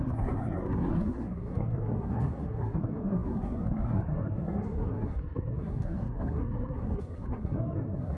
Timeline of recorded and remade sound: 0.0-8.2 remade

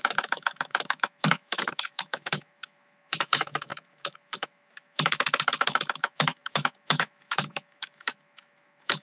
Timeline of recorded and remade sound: 0.0-9.0 remade